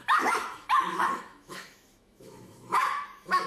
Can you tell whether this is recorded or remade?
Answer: remade